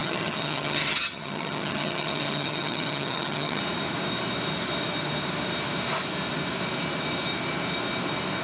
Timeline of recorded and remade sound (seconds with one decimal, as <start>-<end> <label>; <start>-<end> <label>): 0.0-3.6 remade; 3.6-8.4 recorded